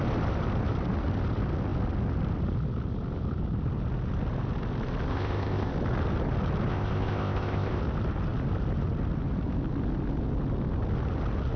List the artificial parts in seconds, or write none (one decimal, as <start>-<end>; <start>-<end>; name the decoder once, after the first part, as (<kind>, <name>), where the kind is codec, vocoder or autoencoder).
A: 5.1-5.7 (codec, ZipCodec); 6.7-7.8